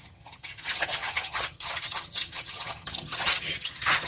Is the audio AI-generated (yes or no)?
yes